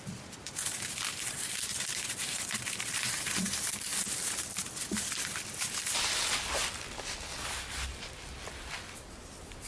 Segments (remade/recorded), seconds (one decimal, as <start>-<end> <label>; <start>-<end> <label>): 0.0-0.6 remade; 0.6-2.8 recorded; 2.8-3.9 remade; 3.9-7.9 recorded; 7.9-9.7 remade